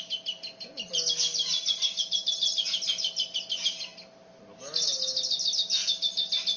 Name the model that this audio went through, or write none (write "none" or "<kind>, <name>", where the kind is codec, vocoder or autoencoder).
none